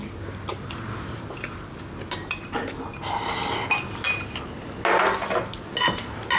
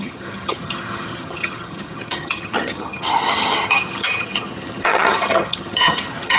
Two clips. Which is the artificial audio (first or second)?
second